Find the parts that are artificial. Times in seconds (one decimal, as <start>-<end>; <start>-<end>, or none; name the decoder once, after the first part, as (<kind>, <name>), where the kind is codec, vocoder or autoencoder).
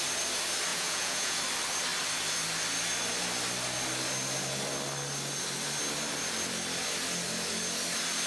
0.7-1.4 (vocoder, Vocos)